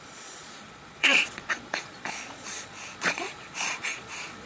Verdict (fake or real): fake